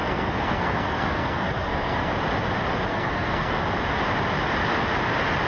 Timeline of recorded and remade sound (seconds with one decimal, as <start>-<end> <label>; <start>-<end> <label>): 0.0-2.1 remade; 2.1-2.9 recorded; 2.9-3.6 remade; 3.6-5.5 recorded